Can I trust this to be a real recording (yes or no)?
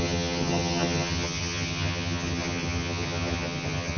no